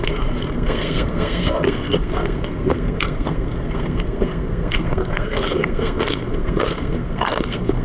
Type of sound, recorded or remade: remade